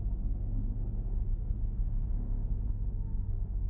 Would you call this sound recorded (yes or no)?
no